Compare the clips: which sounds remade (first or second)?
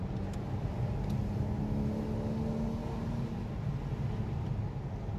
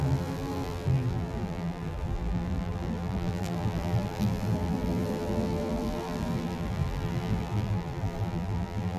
second